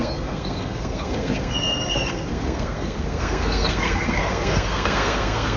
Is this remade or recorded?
remade